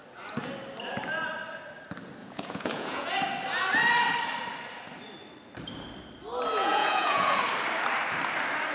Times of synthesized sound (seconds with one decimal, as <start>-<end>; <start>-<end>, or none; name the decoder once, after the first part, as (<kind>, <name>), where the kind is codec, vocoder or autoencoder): 2.2-3.1 (vocoder, Vocos); 6.6-7.4